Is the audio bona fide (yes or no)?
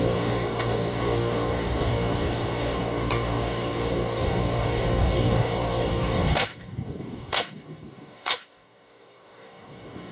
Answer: no